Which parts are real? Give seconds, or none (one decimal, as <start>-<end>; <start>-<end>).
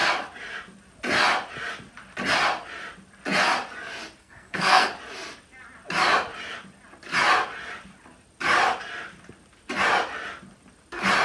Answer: 0.0-4.2; 4.9-11.2